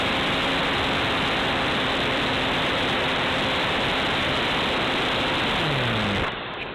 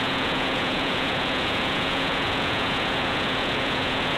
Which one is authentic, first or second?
first